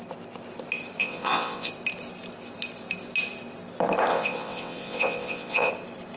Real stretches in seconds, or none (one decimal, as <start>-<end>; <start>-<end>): 0.0-1.0; 1.7-4.1; 5.7-6.2